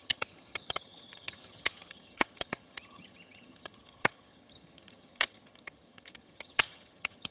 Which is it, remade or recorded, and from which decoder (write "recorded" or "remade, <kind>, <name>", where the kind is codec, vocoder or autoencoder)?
remade, vocoder, HiFi-GAN